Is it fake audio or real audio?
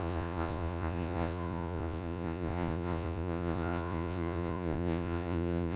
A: fake